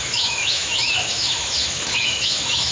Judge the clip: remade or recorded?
remade